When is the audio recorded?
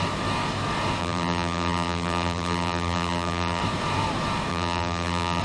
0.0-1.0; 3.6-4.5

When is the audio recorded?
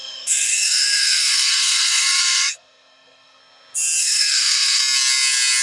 3.4-4.0; 4.8-5.6